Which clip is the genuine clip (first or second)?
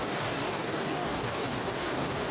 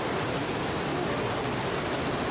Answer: second